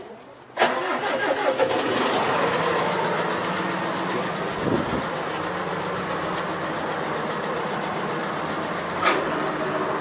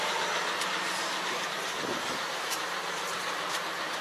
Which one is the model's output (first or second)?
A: second